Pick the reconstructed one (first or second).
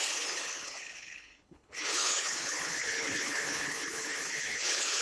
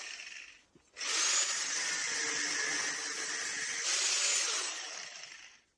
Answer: first